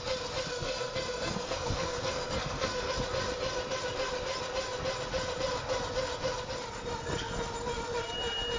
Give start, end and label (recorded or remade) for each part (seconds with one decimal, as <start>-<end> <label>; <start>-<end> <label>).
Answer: 0.0-0.5 recorded; 0.5-2.9 remade; 2.9-8.6 recorded